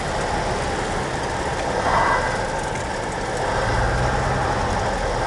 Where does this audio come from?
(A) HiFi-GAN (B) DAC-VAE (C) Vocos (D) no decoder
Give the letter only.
D